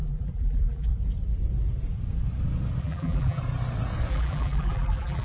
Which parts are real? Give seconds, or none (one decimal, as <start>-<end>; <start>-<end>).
0.9-2.8; 3.4-4.1